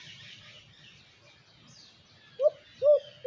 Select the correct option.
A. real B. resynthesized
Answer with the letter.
A